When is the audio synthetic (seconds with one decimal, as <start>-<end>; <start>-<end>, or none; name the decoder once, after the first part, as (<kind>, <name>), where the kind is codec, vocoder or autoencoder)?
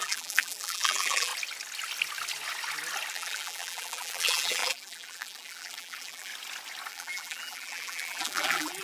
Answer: 0.0-1.3 (vocoder, BigVGAN v2); 3.1-6.3; 6.9-8.8